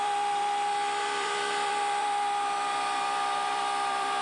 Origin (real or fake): fake